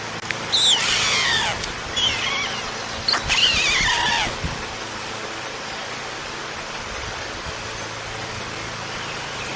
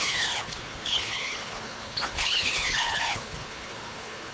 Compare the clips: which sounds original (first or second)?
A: first